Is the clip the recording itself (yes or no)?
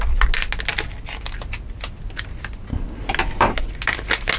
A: yes